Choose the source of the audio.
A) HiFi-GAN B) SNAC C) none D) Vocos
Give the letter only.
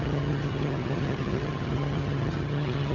A